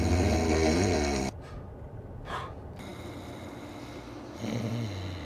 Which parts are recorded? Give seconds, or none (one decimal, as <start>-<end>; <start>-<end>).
0.0-5.2

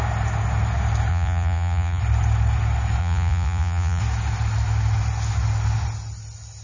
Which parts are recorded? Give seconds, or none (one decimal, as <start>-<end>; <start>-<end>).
0.0-1.1; 2.0-3.0; 4.0-6.6

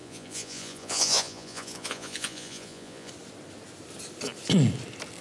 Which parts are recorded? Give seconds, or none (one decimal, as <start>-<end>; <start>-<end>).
3.1-5.2

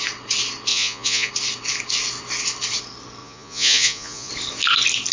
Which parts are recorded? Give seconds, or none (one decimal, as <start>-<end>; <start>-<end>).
0.0-0.7; 1.3-3.2; 4.3-5.1

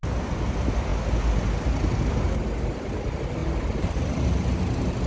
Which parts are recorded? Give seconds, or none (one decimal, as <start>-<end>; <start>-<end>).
0.0-5.1